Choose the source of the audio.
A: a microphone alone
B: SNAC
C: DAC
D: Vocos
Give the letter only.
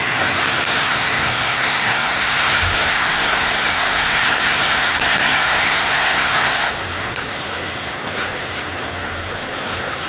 B